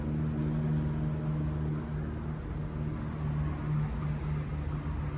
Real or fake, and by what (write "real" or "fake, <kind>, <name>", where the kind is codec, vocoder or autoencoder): real